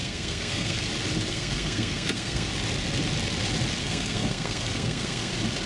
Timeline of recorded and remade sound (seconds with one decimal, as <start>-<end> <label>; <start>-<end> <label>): 0.0-0.9 remade; 0.9-1.3 recorded; 1.3-2.5 remade; 2.5-3.8 recorded; 3.8-5.3 remade; 5.3-5.7 recorded